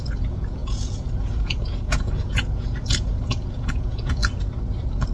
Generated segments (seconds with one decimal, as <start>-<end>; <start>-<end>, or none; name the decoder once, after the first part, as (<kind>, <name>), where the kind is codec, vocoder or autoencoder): 0.0-4.2 (vocoder, Vocos)